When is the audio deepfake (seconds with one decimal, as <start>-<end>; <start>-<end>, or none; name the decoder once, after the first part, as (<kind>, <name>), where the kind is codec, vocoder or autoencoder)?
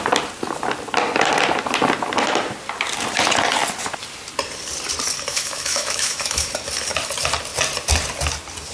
5.3-6.5 (autoencoder, DAC-VAE)